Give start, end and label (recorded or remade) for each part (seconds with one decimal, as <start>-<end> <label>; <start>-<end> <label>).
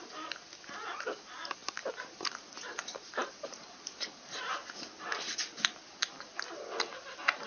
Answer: 0.0-1.6 recorded; 1.6-4.1 remade; 4.1-7.5 recorded